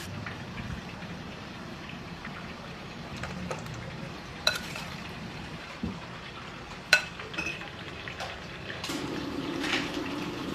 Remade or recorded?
remade